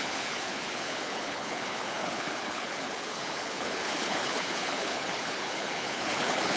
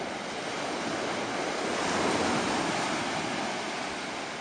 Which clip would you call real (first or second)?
second